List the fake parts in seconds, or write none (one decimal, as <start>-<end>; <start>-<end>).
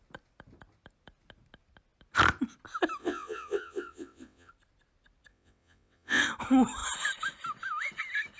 3.0-4.5; 5.3-6.2